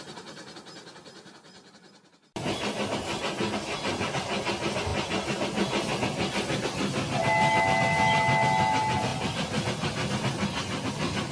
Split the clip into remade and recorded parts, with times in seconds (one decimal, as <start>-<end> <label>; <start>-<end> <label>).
0.0-11.3 recorded